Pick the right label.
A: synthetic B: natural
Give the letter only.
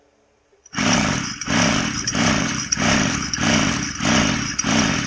B